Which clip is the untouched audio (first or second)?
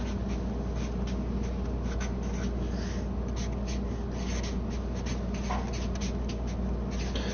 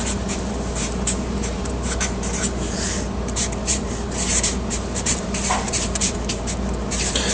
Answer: first